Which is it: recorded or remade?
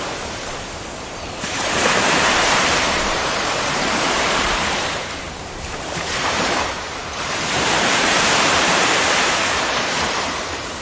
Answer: remade